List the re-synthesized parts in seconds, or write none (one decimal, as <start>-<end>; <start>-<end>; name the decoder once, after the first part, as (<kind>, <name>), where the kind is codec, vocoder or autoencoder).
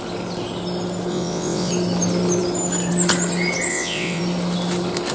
1.1-1.7 (vocoder, WaveNeXt); 3.7-4.2